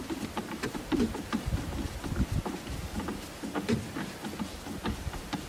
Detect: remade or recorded remade